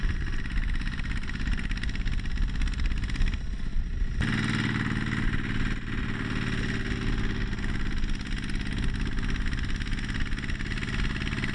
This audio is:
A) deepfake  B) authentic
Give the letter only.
B